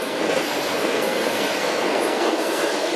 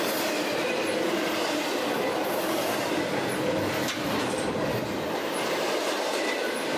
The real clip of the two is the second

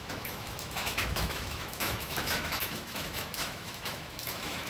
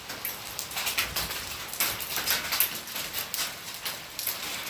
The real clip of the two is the second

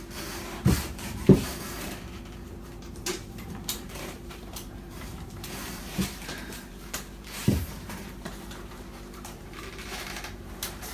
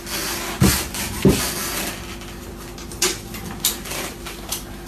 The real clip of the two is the second